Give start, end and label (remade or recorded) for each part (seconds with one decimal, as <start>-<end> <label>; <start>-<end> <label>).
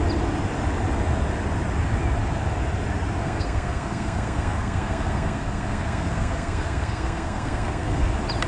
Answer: 0.0-3.2 recorded; 3.2-8.1 remade; 8.1-8.5 recorded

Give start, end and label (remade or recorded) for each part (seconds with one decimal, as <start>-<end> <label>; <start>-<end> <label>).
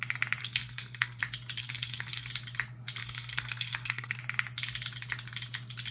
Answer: 0.0-0.4 recorded; 0.4-1.2 remade; 1.2-1.6 recorded; 1.6-2.3 remade; 2.3-3.0 recorded; 3.0-4.2 remade; 4.2-5.9 recorded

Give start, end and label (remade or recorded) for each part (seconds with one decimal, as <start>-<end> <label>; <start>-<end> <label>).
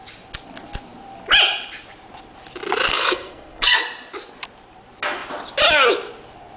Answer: 0.0-2.9 recorded; 2.9-3.8 remade; 3.8-6.6 recorded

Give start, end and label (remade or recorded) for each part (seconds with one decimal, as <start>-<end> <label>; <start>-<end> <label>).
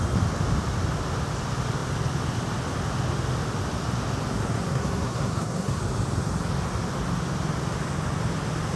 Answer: 0.0-4.5 recorded; 4.5-5.8 remade; 5.8-8.8 recorded